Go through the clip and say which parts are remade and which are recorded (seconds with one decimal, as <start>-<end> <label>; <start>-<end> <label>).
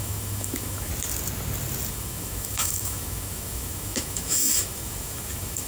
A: 0.0-0.9 remade; 0.9-1.9 recorded; 1.9-5.7 remade